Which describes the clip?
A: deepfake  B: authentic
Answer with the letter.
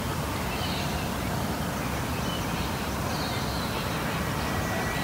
B